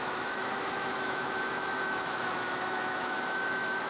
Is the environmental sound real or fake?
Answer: fake